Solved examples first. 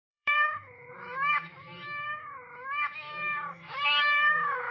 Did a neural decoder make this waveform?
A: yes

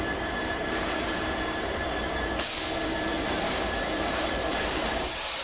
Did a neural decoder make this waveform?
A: yes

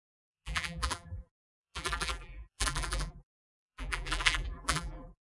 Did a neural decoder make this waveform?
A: yes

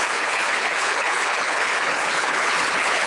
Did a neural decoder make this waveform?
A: yes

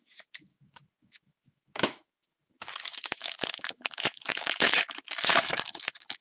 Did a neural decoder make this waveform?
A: yes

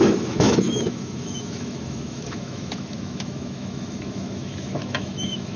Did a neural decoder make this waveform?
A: yes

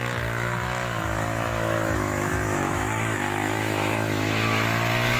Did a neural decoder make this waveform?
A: yes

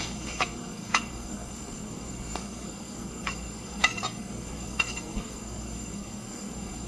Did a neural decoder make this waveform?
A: yes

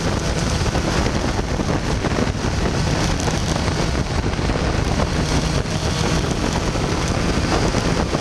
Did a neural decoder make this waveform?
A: no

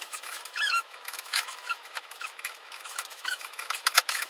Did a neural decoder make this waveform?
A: yes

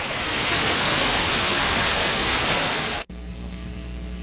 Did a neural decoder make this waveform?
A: yes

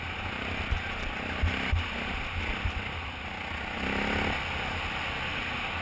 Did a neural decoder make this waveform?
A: no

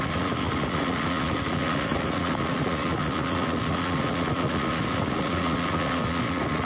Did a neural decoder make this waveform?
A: yes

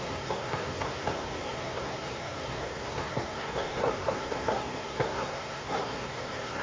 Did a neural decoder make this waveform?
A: yes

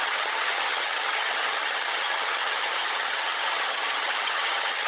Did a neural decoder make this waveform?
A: yes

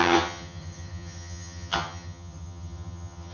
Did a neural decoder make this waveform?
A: yes